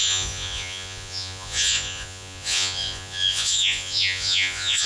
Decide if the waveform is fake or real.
fake